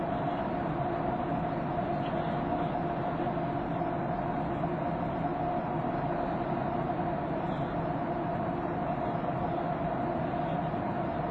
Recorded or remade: recorded